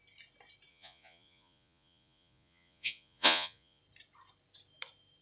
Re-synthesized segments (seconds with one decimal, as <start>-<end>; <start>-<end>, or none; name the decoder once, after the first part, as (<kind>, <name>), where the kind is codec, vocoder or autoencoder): 0.7-3.8 (vocoder, Vocos)